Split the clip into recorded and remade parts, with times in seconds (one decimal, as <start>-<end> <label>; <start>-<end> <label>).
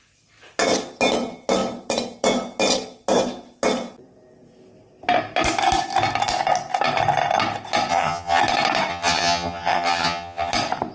0.0-7.9 recorded; 7.9-8.4 remade; 8.4-8.9 recorded; 8.9-10.5 remade; 10.5-10.9 recorded